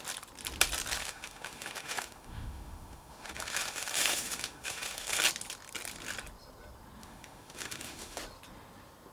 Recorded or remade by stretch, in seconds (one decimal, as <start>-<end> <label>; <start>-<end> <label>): 0.0-1.0 recorded; 1.0-5.2 remade; 5.2-7.0 recorded; 7.0-8.2 remade; 8.2-9.1 recorded